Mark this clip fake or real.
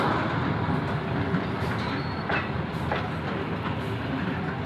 real